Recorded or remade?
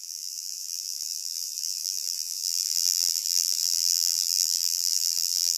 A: remade